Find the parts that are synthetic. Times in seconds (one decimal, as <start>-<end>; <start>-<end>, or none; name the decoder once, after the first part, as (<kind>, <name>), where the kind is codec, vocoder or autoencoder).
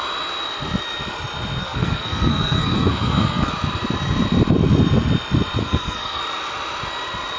1.6-3.5 (codec, SNAC); 5.6-6.2